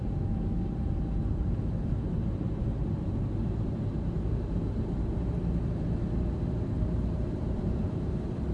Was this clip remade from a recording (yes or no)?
yes